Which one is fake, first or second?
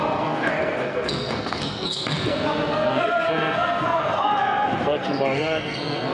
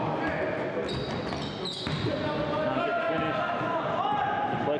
first